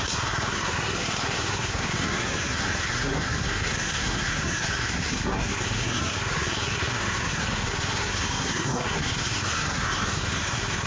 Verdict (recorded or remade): remade